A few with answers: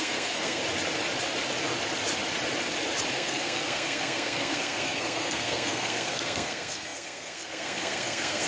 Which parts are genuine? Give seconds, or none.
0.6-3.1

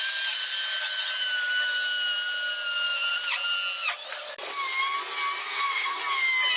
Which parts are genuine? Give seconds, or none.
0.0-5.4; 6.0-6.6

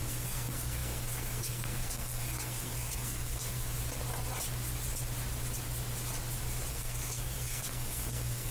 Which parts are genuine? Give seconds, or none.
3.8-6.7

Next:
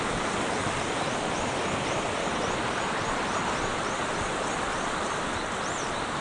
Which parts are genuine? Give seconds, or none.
0.0-6.2